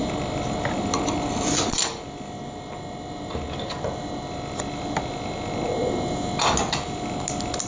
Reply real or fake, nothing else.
real